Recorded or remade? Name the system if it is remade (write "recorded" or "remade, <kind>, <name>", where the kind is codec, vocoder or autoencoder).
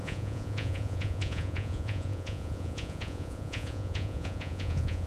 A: remade, vocoder, Vocos